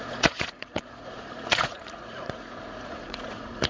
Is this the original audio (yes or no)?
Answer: no